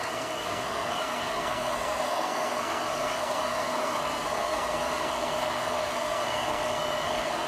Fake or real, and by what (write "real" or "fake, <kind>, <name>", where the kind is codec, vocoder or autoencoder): fake, codec, SNAC